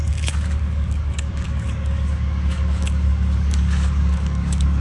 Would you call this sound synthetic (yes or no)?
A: yes